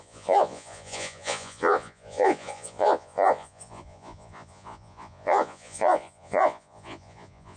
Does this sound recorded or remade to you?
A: remade